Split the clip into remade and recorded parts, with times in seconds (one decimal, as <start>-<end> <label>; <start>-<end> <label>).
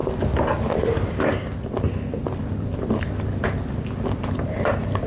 0.0-5.1 recorded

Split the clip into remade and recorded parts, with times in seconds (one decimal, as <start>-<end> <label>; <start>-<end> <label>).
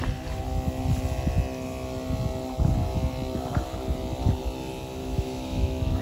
0.0-5.0 recorded; 5.0-6.0 remade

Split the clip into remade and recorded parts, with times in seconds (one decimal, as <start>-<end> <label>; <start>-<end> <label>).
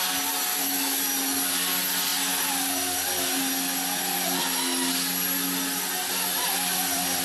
0.0-0.5 recorded; 0.5-1.0 remade; 1.0-7.2 recorded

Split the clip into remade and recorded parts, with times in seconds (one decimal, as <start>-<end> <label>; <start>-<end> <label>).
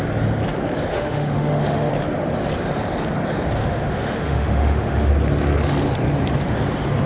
0.0-0.9 recorded; 0.9-1.9 remade; 1.9-3.6 recorded; 3.6-5.1 remade; 5.1-7.0 recorded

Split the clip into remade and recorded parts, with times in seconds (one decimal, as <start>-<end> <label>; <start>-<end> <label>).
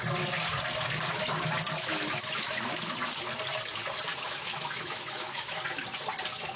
0.0-1.8 recorded; 1.8-2.8 remade; 2.8-4.1 recorded; 4.1-5.6 remade; 5.6-6.6 recorded